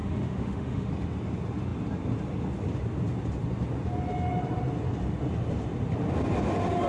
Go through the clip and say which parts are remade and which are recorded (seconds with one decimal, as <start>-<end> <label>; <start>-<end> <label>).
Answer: 0.0-0.9 remade; 0.9-6.9 recorded